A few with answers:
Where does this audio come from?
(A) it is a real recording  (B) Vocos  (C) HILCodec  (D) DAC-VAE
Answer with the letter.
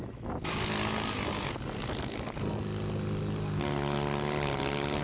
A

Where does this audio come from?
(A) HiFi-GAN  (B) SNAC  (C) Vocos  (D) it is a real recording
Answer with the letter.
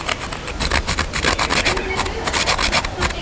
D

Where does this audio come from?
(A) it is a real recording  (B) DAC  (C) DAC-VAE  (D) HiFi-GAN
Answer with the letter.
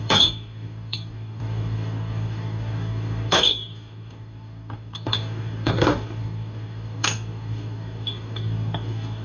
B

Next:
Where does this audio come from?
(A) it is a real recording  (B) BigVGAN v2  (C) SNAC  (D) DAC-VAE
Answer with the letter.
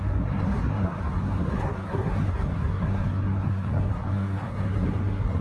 C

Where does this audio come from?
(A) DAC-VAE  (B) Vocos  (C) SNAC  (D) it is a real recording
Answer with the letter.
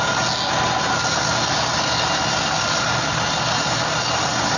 D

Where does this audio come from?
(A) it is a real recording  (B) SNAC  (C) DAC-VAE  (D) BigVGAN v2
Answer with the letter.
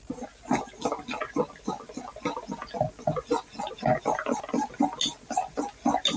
A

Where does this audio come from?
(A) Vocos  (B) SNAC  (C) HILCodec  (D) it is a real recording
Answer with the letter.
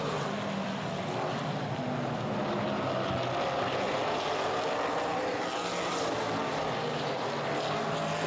D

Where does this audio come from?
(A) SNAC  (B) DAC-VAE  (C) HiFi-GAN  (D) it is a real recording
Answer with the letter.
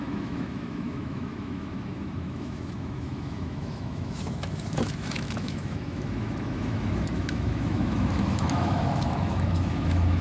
B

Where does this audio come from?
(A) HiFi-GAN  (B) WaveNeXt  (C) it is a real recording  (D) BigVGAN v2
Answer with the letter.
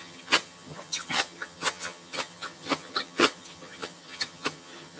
A